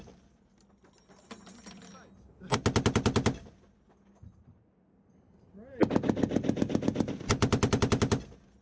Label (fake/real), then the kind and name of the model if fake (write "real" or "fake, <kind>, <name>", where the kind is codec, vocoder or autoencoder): real